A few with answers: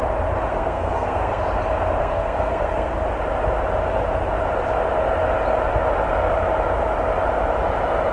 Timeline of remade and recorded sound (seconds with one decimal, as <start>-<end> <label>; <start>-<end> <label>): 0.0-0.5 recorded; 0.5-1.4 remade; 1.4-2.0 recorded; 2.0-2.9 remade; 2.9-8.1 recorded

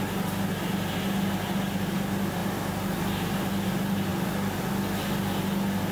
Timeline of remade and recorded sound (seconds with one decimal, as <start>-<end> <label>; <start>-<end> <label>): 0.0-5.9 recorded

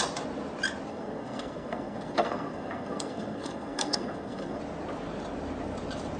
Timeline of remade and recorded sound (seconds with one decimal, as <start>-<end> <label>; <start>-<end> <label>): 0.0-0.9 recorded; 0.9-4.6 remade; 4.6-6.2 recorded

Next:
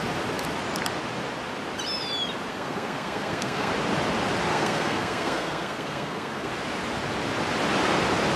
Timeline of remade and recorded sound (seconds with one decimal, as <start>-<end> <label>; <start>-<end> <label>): 0.0-2.5 recorded; 2.5-3.7 remade; 3.7-4.5 recorded; 4.5-6.5 remade; 6.5-8.4 recorded

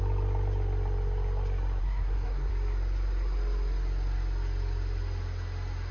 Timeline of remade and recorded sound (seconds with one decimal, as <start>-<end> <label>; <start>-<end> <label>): 0.0-1.8 recorded; 1.8-2.5 remade; 2.5-5.9 recorded

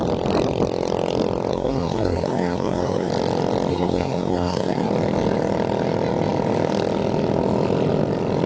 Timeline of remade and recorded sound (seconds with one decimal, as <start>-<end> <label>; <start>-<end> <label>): 0.0-1.5 recorded; 1.5-3.1 remade; 3.1-3.7 recorded; 3.7-4.9 remade; 4.9-8.5 recorded